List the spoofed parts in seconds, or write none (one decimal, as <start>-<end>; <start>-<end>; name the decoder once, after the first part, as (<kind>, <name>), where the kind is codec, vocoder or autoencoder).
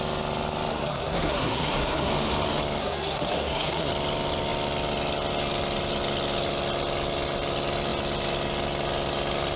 0.7-2.1 (codec, SNAC); 2.8-3.9